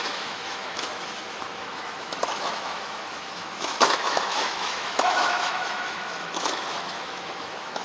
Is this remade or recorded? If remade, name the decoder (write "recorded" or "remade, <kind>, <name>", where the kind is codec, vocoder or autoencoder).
remade, autoencoder, DAC-VAE